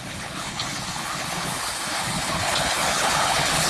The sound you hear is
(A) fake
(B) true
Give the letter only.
A